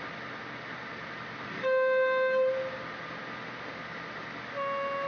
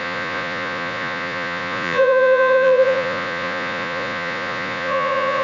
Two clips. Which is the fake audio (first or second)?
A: second